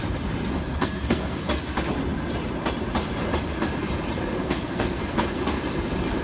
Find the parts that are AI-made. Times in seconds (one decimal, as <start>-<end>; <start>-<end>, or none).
0.7-1.6; 4.4-5.6